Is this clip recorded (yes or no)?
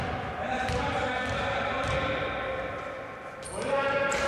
yes